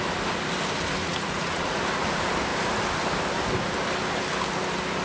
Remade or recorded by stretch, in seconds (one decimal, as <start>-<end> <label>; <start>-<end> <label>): 0.0-1.0 recorded; 1.0-1.8 remade; 1.8-5.0 recorded